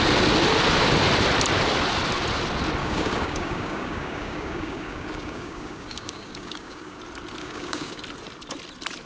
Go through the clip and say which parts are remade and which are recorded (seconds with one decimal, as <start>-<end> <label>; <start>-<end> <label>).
0.0-2.8 recorded; 2.8-7.0 remade; 7.0-7.4 recorded; 7.4-8.0 remade; 8.0-9.1 recorded

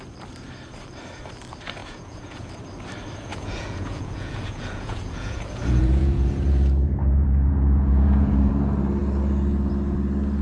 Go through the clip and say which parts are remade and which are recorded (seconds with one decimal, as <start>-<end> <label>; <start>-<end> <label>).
0.0-1.8 recorded; 1.8-2.5 remade; 2.5-3.3 recorded; 3.3-8.5 remade; 8.5-10.4 recorded

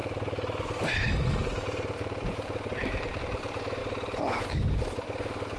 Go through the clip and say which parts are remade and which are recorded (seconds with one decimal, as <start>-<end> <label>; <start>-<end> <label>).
0.0-3.2 remade; 3.2-5.6 recorded

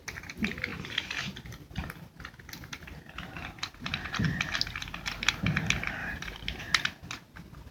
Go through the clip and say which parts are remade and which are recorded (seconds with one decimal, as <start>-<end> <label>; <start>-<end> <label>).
0.0-6.0 recorded; 6.0-6.6 remade; 6.6-7.7 recorded